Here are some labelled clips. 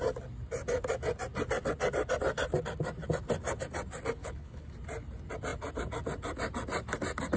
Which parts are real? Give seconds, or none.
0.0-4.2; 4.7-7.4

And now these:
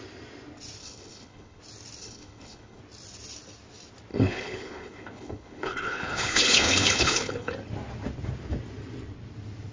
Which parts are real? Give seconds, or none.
0.0-0.8; 1.6-2.0; 2.8-4.1; 7.5-9.7